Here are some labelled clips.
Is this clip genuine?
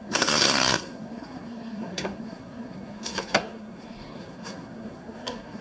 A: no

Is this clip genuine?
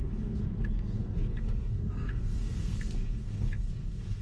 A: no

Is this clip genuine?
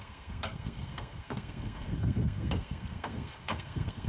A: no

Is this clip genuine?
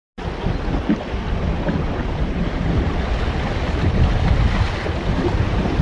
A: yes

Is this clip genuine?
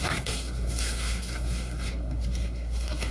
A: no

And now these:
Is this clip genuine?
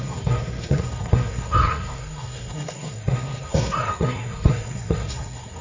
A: no